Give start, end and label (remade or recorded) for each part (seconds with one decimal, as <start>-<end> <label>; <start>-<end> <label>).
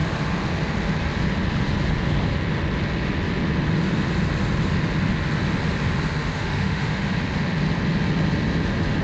0.0-6.2 recorded; 6.2-7.0 remade; 7.0-9.0 recorded